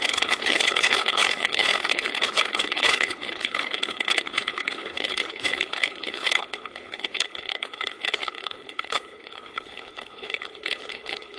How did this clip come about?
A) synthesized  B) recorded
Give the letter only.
A